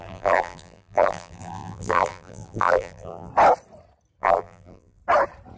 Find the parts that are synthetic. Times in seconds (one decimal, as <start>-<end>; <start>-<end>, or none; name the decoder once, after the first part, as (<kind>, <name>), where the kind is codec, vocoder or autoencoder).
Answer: 0.0-3.3 (vocoder, BigVGAN v2); 4.2-5.0